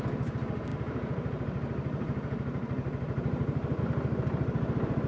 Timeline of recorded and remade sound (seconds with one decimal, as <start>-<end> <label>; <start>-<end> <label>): 0.0-0.7 recorded; 0.7-3.8 remade; 3.8-5.1 recorded